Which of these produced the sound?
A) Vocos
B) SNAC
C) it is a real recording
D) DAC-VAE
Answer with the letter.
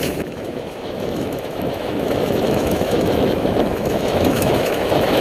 D